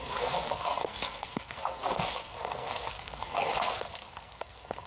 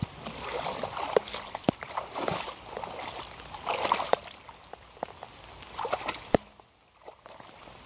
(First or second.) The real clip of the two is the second